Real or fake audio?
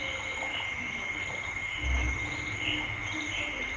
real